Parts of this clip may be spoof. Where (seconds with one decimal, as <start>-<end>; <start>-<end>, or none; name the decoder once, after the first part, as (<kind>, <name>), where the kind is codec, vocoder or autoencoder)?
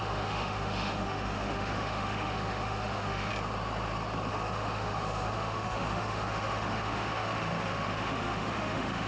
0.0-3.3 (autoencoder, DAC-VAE); 4.3-9.1